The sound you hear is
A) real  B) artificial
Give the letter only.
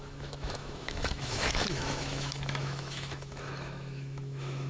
B